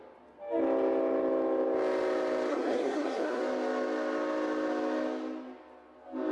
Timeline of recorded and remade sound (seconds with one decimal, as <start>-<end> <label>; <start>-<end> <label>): 0.0-2.5 recorded; 2.5-3.4 remade; 3.4-6.3 recorded